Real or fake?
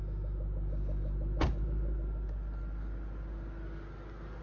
real